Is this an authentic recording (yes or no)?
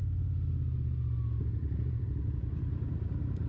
yes